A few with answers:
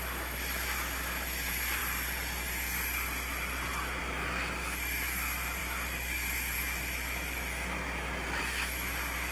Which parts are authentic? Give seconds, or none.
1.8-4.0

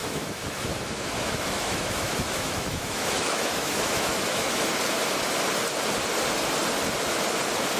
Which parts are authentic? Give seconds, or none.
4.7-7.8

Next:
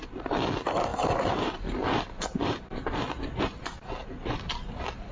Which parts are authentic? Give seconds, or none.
0.0-5.1

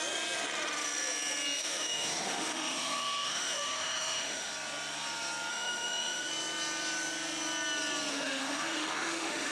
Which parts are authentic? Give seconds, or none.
0.0-1.6; 4.5-5.5; 6.3-8.1